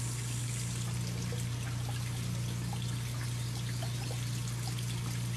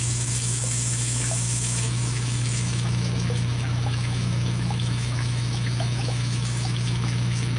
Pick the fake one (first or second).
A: second